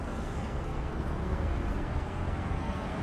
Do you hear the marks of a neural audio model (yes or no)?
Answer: yes